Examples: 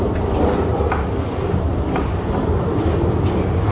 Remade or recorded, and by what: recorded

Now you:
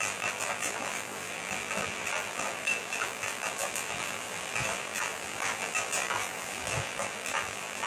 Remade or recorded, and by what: remade, vocoder, BigVGAN v2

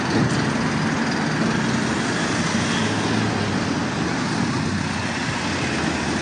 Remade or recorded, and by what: recorded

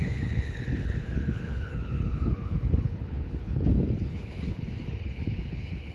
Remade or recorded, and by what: remade, codec, HILCodec